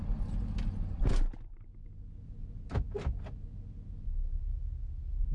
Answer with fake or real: real